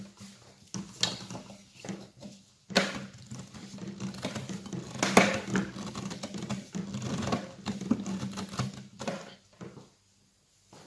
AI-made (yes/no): no